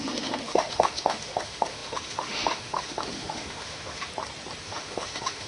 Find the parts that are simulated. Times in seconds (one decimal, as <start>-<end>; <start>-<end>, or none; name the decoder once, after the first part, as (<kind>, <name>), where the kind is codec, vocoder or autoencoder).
0.0-4.1 (autoencoder, DAC-VAE); 4.6-5.5